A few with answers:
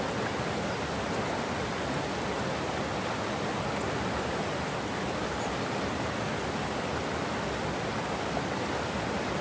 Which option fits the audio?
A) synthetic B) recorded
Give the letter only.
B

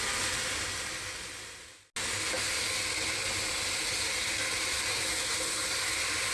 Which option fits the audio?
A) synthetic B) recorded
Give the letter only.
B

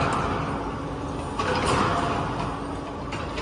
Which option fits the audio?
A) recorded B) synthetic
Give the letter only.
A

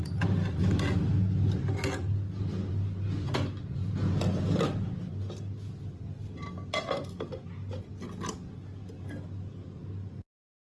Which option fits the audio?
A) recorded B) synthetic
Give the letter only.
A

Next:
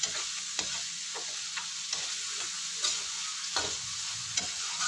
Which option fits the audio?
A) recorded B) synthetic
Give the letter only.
B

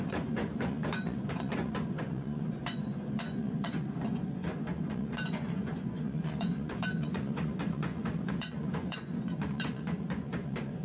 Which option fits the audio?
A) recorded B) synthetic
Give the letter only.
B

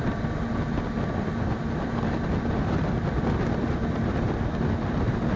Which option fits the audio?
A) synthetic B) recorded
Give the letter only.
B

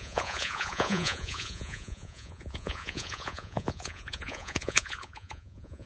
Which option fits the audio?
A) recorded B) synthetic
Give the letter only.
B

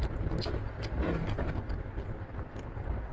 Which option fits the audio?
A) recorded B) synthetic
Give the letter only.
A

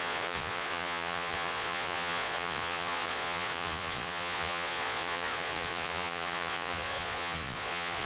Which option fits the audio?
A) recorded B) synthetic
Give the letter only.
B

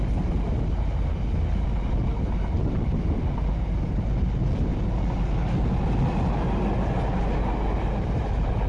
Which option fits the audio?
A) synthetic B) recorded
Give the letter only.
B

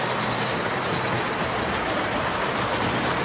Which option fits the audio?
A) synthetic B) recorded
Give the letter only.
B